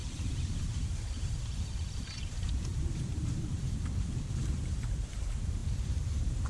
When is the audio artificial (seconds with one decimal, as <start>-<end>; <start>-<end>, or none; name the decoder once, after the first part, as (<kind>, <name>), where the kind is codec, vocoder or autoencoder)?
0.0-6.5 (vocoder, BigVGAN v2)